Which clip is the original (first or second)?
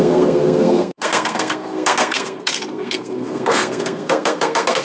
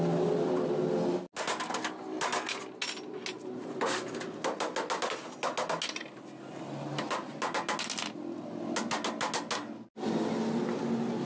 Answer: second